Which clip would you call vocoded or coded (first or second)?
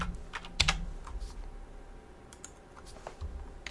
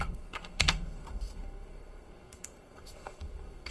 second